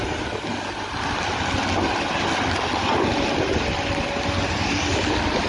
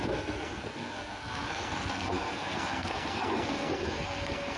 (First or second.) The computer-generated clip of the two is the second